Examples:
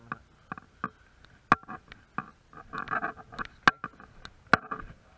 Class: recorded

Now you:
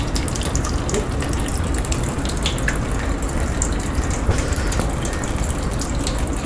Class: recorded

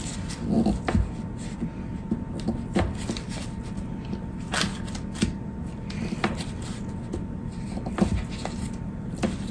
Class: recorded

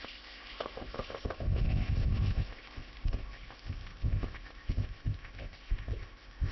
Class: remade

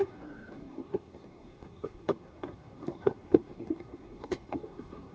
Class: remade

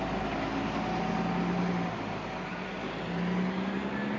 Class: recorded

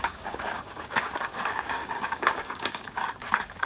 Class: remade